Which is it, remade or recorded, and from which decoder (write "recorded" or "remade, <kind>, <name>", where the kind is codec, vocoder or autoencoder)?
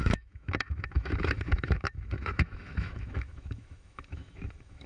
remade, autoencoder, DAC-VAE